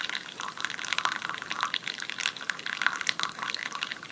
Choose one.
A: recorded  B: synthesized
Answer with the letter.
A